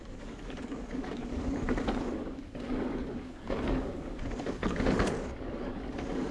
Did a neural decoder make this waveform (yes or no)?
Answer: yes